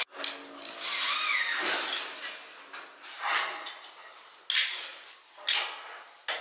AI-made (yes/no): no